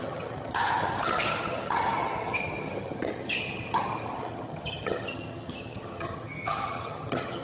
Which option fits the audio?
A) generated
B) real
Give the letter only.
A